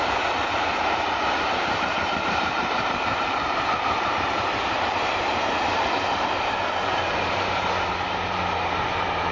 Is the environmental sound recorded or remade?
remade